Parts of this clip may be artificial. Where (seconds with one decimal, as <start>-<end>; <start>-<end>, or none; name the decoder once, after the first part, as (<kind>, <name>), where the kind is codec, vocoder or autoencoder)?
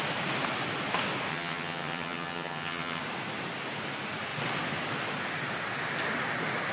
1.3-3.0 (vocoder, HiFi-GAN)